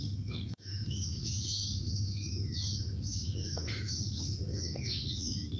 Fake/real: fake